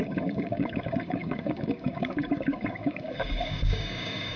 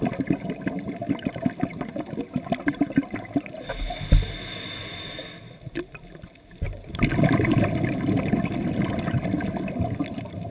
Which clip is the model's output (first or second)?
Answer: first